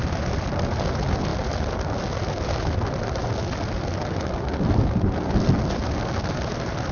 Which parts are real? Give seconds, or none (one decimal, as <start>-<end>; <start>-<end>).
0.0-6.9